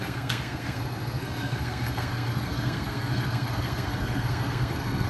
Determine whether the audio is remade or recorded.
remade